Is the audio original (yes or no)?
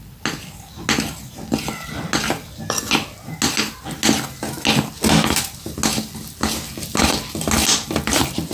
yes